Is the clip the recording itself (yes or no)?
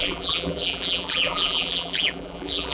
no